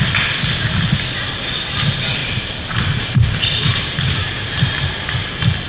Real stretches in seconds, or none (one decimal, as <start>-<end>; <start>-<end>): 0.0-2.2; 3.8-5.7